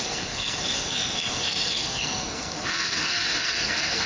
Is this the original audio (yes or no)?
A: no